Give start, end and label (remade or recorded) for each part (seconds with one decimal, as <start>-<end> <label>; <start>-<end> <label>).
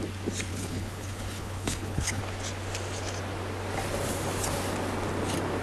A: 0.0-0.5 recorded; 0.5-2.2 remade; 2.2-5.6 recorded